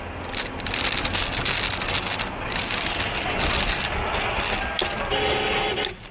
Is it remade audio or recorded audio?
recorded